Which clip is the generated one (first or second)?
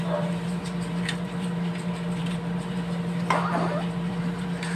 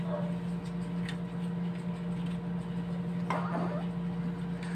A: first